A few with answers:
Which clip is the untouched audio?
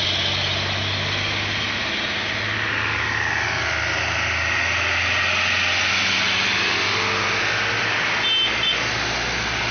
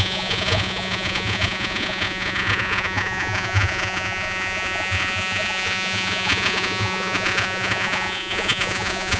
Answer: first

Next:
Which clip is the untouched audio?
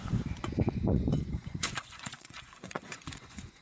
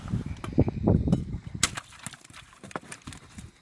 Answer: second